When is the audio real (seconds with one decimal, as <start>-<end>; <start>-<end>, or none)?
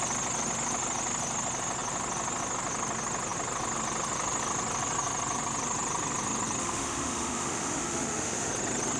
0.0-6.6; 8.5-9.0